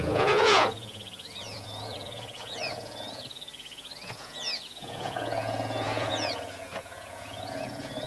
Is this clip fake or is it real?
fake